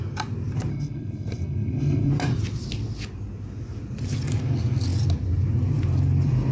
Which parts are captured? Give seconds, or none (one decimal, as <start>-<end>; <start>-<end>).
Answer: 0.0-0.7; 2.1-6.5